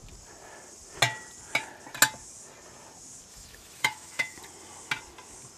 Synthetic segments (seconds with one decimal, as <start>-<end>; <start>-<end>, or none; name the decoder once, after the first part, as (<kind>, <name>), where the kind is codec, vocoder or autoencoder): 3.3-4.4 (autoencoder, DAC-VAE)